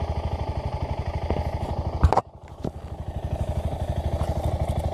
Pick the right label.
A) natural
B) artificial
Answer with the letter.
A